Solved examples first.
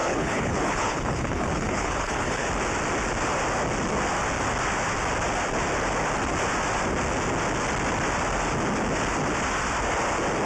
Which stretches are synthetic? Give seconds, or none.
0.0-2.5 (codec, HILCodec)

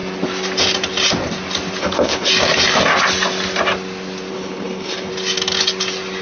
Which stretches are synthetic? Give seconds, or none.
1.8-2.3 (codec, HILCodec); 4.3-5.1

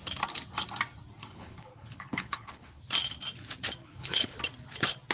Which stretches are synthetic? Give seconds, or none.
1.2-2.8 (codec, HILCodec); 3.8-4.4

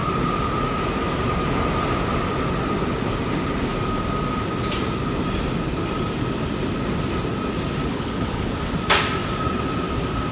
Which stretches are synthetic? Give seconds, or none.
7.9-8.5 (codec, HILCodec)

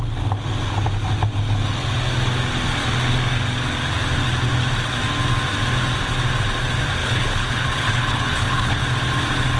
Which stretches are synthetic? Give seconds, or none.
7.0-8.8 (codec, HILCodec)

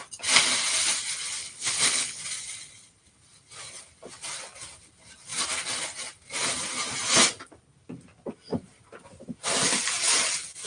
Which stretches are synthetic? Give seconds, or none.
1.4-2.2 (codec, HILCodec)

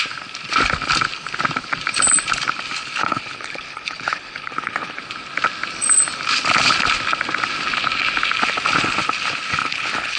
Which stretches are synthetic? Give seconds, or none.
3.0-5.0 (codec, HILCodec); 9.6-10.2

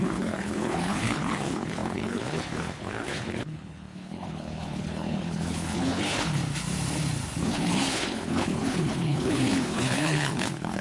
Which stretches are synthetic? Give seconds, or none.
0.0-6.4 (codec, HILCodec); 7.4-10.8